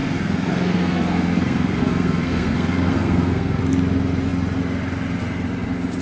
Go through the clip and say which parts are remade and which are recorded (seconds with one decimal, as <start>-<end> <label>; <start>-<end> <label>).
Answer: 0.0-3.6 remade; 3.6-6.0 recorded